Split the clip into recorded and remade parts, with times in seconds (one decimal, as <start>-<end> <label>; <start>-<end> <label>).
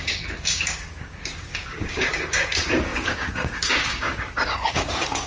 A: 0.0-5.3 remade